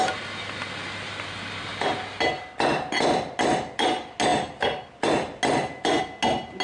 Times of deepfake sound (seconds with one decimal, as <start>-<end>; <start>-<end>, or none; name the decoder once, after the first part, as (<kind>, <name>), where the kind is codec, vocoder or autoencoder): none